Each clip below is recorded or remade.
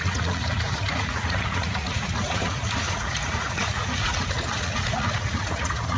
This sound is remade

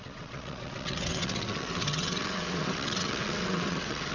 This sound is remade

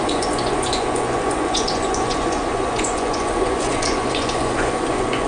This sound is remade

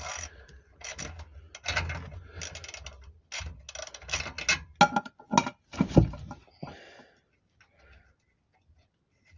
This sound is recorded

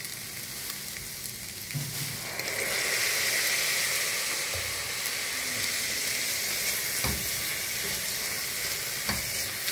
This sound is recorded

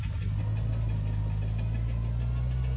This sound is recorded